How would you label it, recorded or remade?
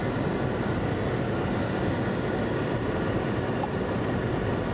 recorded